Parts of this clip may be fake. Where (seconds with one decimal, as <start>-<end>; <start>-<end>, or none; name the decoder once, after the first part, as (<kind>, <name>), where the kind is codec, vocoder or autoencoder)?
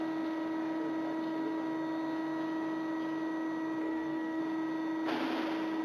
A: 3.8-4.4 (codec, SNAC)